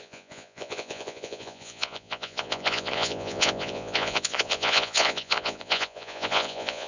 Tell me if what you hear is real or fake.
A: fake